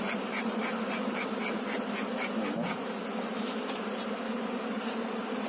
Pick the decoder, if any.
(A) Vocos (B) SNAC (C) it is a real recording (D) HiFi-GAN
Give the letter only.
C